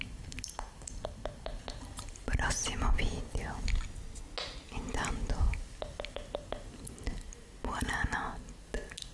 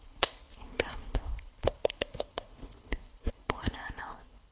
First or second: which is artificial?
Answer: second